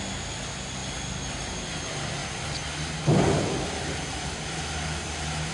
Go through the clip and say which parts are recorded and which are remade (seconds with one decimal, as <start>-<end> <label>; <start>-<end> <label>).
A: 0.0-5.5 recorded